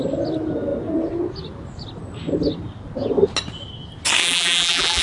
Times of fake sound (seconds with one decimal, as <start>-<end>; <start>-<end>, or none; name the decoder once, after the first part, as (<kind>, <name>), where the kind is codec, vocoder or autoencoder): 4.2-5.0 (vocoder, BigVGAN v2)